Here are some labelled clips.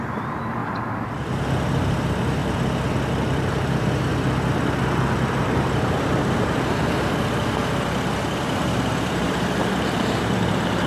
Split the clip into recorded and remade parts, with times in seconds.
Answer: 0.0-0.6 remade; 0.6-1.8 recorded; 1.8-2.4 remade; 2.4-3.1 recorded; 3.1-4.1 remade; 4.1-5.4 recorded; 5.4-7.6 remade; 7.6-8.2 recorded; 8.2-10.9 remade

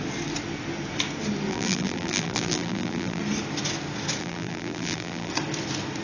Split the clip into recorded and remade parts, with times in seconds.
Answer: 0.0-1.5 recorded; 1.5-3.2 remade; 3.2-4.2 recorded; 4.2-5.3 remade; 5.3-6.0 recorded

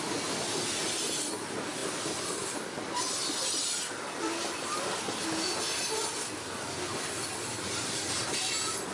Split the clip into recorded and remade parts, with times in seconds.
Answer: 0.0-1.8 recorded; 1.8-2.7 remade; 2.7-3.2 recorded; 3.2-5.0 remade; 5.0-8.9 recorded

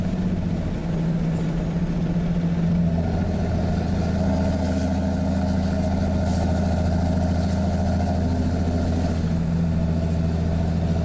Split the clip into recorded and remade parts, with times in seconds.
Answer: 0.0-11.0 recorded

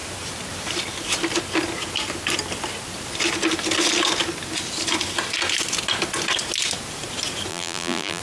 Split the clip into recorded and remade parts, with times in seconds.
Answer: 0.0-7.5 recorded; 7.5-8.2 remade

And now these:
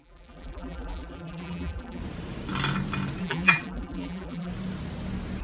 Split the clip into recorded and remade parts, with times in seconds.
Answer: 0.0-2.0 remade; 2.0-3.2 recorded; 3.2-4.5 remade; 4.5-5.4 recorded